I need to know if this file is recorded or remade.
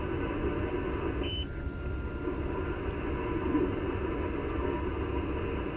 recorded